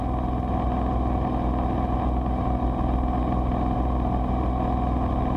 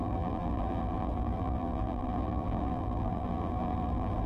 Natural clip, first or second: first